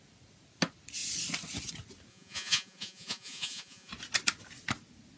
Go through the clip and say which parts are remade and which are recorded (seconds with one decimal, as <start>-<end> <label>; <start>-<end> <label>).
0.0-2.1 recorded; 2.1-3.9 remade; 3.9-5.2 recorded